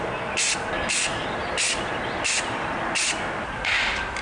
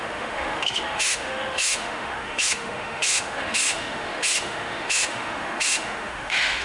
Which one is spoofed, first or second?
second